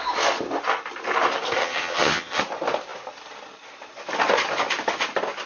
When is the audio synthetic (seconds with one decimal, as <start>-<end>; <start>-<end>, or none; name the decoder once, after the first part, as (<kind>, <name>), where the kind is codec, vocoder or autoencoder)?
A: 1.6-2.4 (vocoder, HiFi-GAN)